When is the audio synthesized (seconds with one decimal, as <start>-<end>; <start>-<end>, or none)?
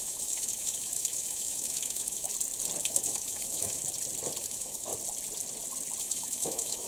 0.0-2.3; 2.8-3.8; 4.4-4.9; 6.0-6.9